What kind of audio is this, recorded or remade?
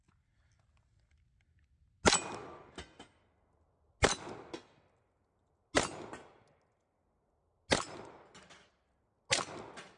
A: recorded